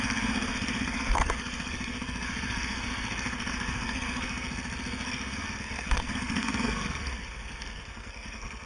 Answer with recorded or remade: remade